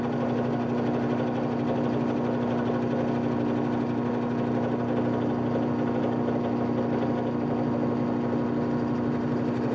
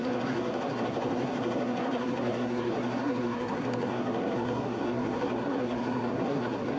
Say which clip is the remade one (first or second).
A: second